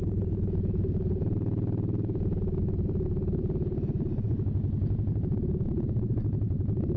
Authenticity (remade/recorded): recorded